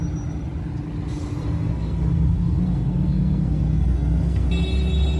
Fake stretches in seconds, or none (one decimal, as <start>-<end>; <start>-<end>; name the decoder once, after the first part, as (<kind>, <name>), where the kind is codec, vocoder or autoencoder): 1.4-4.5 (codec, SNAC)